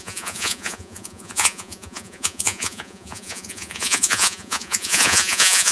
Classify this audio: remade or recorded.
remade